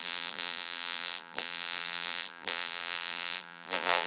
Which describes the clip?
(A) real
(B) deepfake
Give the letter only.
B